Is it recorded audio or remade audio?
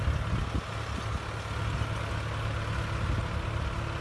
recorded